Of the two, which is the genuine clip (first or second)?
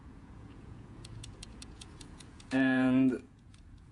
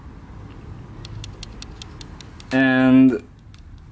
second